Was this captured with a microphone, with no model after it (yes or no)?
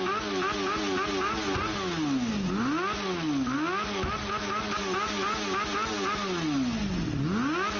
yes